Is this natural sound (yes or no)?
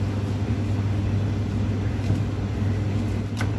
yes